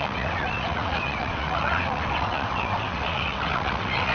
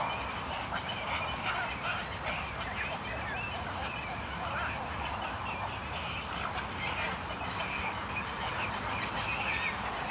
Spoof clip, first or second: first